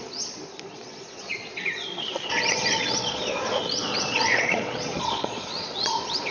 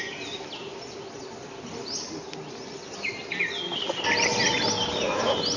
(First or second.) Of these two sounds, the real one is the second